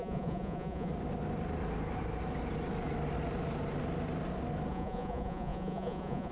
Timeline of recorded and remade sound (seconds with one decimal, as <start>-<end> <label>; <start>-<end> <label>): 0.0-0.9 remade; 0.9-4.7 recorded; 4.7-6.3 remade